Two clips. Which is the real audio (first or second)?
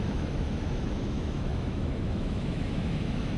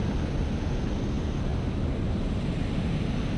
second